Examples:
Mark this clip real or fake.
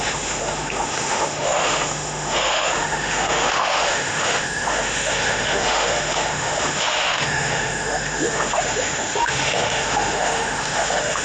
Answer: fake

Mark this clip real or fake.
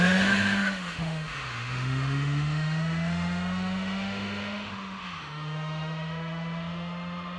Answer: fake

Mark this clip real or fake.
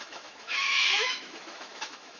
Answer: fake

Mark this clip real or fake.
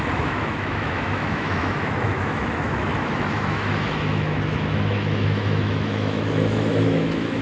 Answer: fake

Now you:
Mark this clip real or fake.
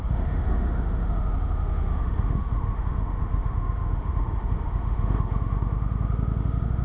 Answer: fake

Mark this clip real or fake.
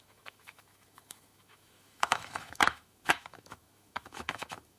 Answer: fake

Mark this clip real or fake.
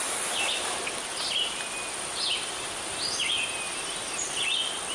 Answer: real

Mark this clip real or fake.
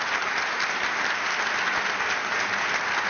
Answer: real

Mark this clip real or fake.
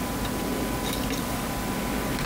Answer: real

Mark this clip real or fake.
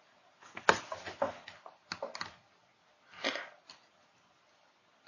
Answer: real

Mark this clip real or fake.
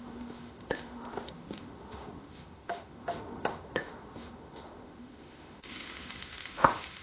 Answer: fake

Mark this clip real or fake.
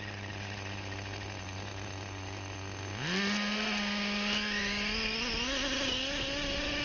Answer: real